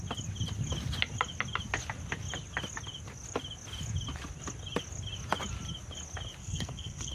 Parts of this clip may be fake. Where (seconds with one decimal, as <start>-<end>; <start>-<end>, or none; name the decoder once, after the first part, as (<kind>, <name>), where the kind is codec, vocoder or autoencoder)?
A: 6.4-7.1 (codec, SNAC)